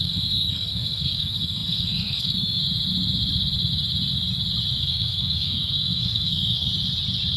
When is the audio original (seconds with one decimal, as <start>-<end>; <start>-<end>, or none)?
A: 2.6-4.8; 6.7-7.4